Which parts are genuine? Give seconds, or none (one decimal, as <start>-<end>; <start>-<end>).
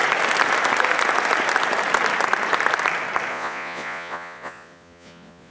0.0-3.3